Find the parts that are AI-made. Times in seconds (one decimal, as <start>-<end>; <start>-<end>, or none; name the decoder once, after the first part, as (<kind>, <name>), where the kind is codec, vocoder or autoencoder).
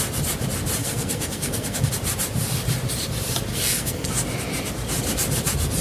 0.8-1.9 (codec, SNAC); 3.5-4.1